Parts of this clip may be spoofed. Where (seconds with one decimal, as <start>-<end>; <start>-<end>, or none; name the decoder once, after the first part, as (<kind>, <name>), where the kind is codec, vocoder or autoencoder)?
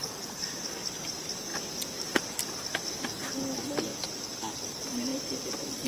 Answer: 0.0-5.9 (vocoder, BigVGAN v2)